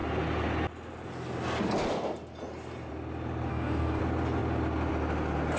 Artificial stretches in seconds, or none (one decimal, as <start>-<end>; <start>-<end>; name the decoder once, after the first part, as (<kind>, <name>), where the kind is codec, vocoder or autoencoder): 3.5-4.0 (codec, DAC)